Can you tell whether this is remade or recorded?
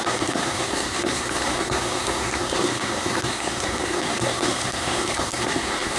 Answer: remade